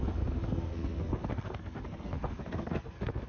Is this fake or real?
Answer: fake